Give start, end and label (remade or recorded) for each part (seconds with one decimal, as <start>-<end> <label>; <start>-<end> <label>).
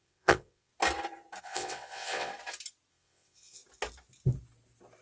0.0-0.7 remade; 0.7-1.4 recorded; 1.4-2.3 remade; 2.3-2.9 recorded; 2.9-3.6 remade; 3.6-5.0 recorded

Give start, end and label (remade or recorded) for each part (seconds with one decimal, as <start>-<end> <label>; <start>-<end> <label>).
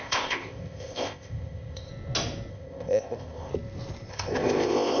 0.0-1.9 remade; 1.9-2.5 recorded; 2.5-3.5 remade; 3.5-4.1 recorded; 4.1-5.0 remade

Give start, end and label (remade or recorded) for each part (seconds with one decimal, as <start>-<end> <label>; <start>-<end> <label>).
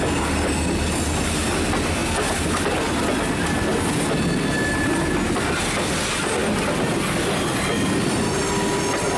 0.0-9.2 recorded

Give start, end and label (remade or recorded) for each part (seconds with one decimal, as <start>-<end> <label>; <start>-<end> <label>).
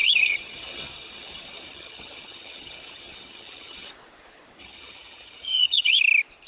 0.0-3.9 remade; 3.9-4.6 recorded; 4.6-6.0 remade; 6.0-6.5 recorded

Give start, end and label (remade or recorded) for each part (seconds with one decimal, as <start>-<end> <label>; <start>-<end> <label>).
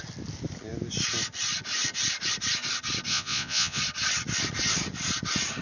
0.0-3.1 recorded; 3.1-3.8 remade; 3.8-5.6 recorded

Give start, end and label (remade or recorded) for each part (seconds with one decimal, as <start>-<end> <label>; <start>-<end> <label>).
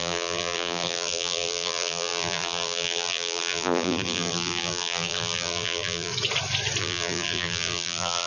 0.0-6.1 remade; 6.1-6.8 recorded; 6.8-8.3 remade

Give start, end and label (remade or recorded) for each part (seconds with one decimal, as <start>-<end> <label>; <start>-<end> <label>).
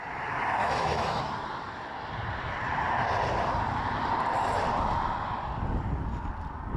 0.0-0.6 recorded; 0.6-1.2 remade; 1.2-6.8 recorded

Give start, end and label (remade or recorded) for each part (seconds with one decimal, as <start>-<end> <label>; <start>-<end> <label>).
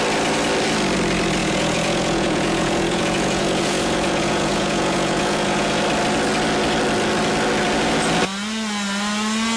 0.0-1.4 recorded; 1.4-5.8 remade; 5.8-9.6 recorded